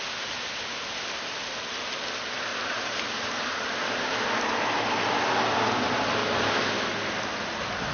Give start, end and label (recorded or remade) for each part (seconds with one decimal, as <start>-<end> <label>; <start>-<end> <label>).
0.0-2.5 recorded; 2.5-5.1 remade; 5.1-7.9 recorded